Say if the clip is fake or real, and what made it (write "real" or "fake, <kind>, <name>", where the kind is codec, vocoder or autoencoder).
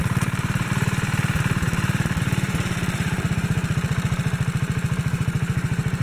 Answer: fake, vocoder, BigVGAN v2